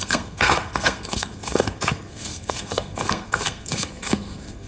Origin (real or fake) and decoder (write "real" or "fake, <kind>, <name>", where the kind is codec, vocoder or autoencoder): fake, codec, SNAC